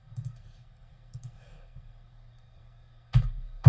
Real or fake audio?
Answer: fake